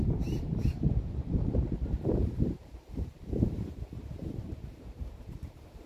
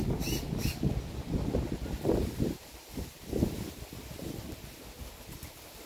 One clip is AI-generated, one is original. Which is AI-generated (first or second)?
first